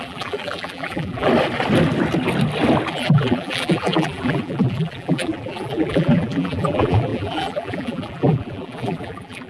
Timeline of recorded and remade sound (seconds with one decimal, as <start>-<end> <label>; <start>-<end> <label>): 0.0-1.3 remade; 1.3-2.9 recorded; 2.9-9.5 remade